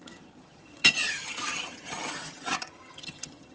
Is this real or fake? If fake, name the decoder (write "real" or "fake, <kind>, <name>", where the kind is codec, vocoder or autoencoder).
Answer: fake, vocoder, HiFi-GAN